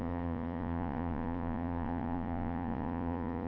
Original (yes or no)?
no